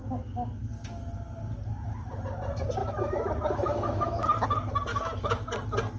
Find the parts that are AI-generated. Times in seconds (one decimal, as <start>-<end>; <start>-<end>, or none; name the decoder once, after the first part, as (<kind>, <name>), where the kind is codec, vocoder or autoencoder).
2.8-4.2 (autoencoder, DAC-VAE); 4.9-5.5